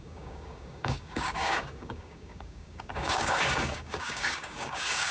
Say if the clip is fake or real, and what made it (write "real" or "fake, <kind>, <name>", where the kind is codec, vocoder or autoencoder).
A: fake, codec, DAC